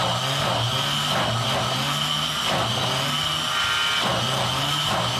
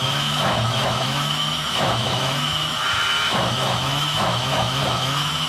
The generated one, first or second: second